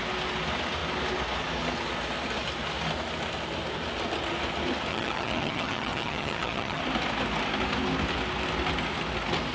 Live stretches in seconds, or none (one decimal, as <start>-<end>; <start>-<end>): 0.0-4.9; 6.8-9.5